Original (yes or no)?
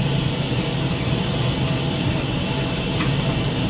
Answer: yes